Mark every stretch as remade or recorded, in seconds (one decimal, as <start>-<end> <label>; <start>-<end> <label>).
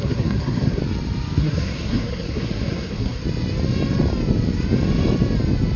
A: 0.0-0.8 remade; 0.8-1.4 recorded; 1.4-3.2 remade; 3.2-5.8 recorded